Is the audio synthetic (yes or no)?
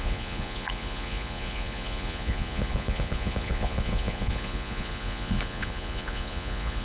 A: yes